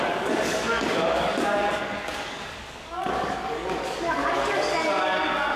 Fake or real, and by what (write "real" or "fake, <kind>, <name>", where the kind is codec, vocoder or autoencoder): fake, codec, DAC